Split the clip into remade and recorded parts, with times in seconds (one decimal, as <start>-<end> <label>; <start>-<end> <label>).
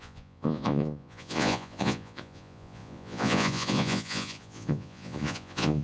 0.0-5.8 remade